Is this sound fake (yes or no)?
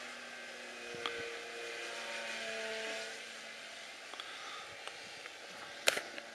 no